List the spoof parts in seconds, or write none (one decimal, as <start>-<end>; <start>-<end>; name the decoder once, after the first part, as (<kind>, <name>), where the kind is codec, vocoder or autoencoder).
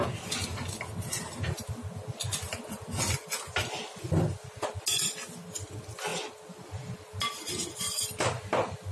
none